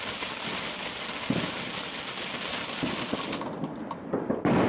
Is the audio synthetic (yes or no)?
no